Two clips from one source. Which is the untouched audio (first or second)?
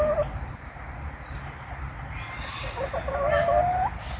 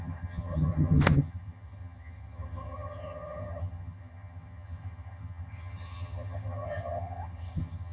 first